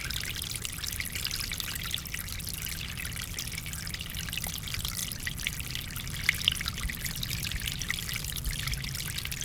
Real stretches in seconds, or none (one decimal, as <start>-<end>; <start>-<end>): 0.0-5.0; 5.7-9.4